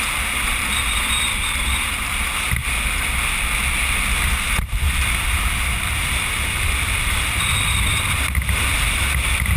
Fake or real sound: real